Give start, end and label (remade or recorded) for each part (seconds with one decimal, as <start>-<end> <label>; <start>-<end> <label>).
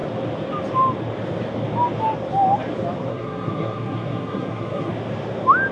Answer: 0.0-3.1 recorded; 3.1-4.9 remade; 4.9-5.7 recorded